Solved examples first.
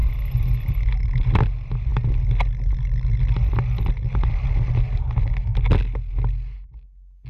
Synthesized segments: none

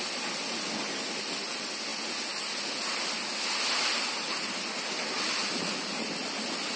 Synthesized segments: none

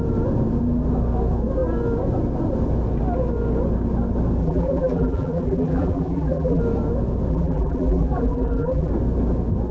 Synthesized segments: 4.4-6.6 (vocoder, BigVGAN v2); 7.3-8.9

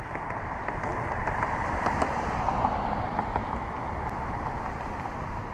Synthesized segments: 0.9-4.2 (vocoder, BigVGAN v2)

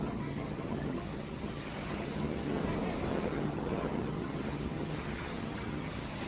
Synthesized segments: 0.0-2.6 (vocoder, HiFi-GAN); 3.1-6.3

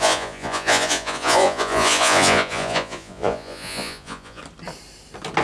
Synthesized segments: 0.0-4.4 (vocoder, Vocos)